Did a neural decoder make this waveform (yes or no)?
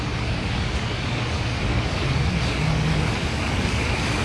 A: yes